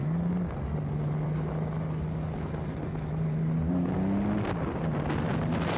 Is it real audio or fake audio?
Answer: real